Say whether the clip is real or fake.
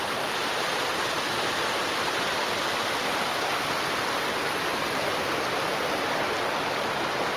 real